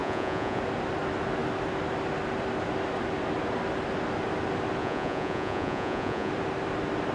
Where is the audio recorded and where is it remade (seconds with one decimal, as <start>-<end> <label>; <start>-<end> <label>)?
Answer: 0.0-0.6 remade; 0.6-4.8 recorded; 4.8-6.3 remade; 6.3-7.1 recorded